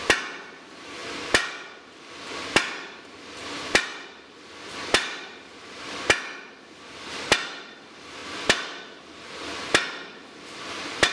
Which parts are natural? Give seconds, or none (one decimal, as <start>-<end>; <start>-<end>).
1.0-2.0